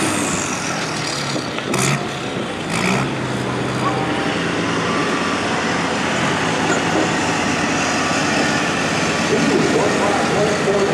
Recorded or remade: recorded